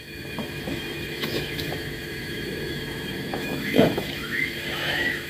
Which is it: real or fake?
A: fake